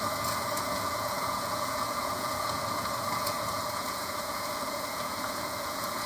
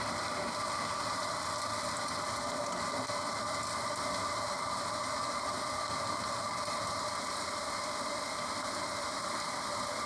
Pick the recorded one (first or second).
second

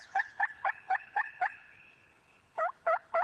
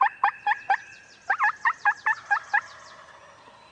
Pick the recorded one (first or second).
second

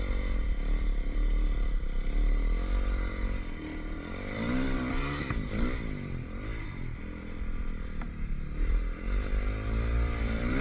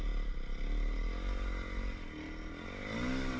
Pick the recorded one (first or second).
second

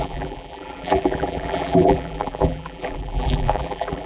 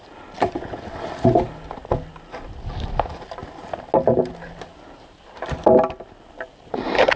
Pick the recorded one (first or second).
second